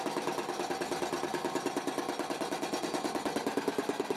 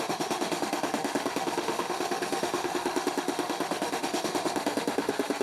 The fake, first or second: second